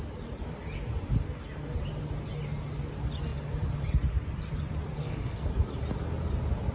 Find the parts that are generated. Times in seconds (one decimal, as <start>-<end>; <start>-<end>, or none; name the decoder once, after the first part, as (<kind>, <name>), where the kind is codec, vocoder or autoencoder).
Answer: 5.0-5.5 (codec, SNAC)